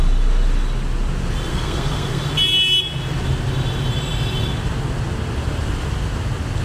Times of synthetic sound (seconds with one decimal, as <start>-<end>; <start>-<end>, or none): 1.5-2.2